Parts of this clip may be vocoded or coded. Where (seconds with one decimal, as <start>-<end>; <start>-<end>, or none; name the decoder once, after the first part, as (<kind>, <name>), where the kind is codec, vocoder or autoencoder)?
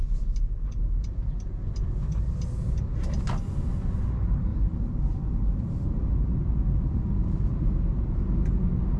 0.0-2.3 (vocoder, BigVGAN v2); 4.5-8.5